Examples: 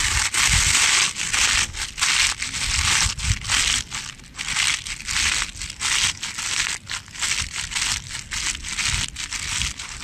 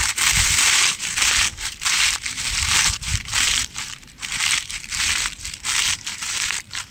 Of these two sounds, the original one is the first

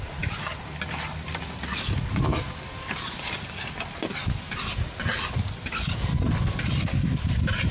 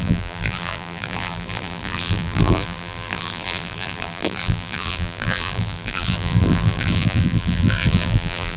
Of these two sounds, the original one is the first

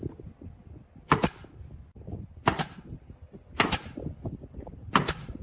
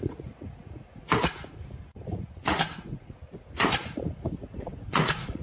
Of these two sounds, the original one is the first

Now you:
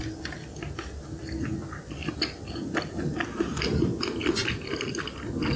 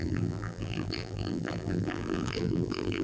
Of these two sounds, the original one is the first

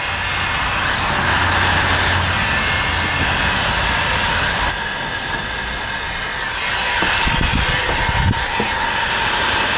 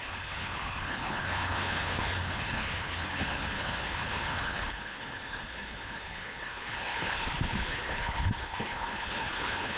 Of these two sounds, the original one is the first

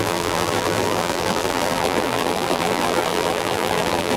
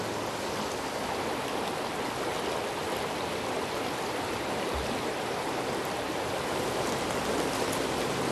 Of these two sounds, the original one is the second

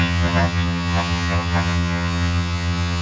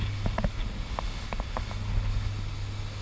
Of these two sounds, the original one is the second